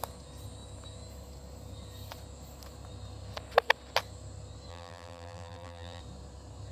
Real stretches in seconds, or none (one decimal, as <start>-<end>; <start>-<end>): 0.0-4.7; 6.0-6.7